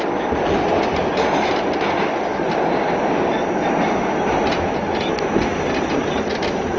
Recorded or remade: recorded